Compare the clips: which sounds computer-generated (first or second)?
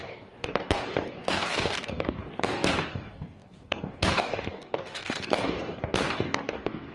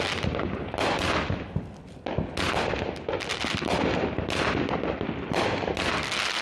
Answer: first